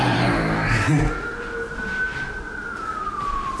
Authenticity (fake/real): real